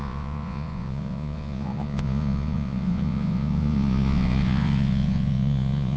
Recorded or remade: remade